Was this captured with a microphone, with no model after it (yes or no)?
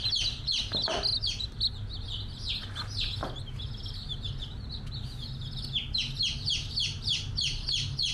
yes